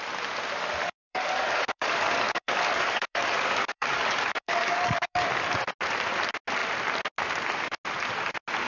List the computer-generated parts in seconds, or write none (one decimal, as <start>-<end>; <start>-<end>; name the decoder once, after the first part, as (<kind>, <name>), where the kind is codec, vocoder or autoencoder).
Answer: 0.8-5.3 (codec, DAC)